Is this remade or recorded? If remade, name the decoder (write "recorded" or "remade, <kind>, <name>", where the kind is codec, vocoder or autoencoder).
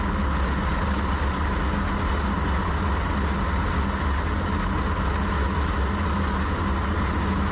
recorded